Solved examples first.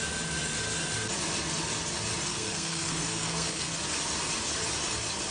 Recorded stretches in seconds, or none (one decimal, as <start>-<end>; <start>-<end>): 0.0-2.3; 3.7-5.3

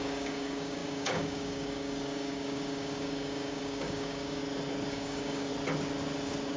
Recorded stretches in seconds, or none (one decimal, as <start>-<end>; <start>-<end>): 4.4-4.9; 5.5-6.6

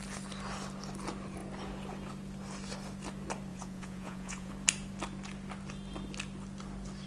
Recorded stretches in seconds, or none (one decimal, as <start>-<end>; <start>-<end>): 0.0-3.5; 4.5-7.1